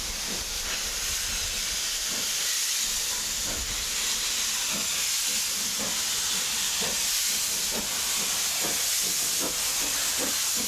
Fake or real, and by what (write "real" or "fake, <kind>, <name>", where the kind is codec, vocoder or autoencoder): real